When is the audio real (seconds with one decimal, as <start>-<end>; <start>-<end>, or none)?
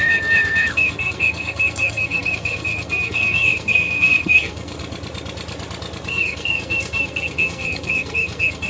4.8-6.1